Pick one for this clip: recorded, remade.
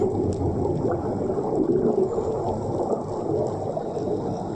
recorded